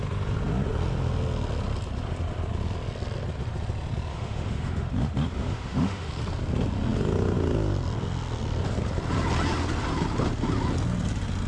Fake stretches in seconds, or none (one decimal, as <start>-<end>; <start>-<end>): 4.1-4.9; 5.4-6.1